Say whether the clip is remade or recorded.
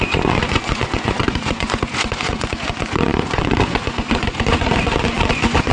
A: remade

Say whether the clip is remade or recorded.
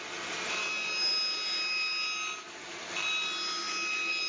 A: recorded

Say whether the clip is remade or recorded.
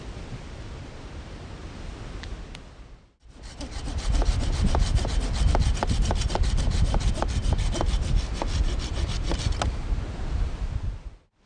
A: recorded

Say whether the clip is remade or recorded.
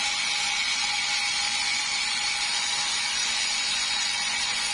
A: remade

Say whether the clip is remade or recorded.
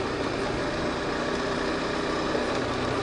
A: recorded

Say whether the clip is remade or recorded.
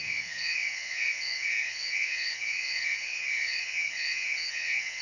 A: remade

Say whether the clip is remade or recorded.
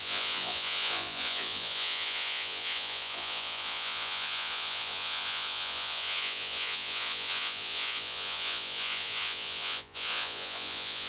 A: remade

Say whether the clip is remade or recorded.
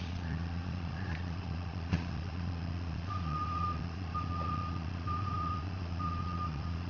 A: remade